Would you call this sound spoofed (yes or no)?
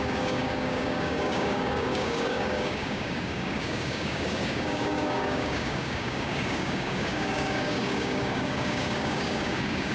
yes